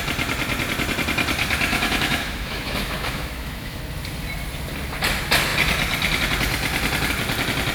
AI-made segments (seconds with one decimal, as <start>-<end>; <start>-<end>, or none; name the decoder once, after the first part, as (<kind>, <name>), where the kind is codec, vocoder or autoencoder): 1.7-3.8 (autoencoder, DAC-VAE)